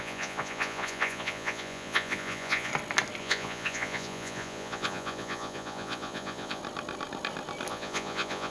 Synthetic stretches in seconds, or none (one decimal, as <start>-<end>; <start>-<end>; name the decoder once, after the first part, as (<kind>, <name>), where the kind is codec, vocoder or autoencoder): 0.0-2.7 (vocoder, Vocos); 3.2-6.6; 7.7-8.5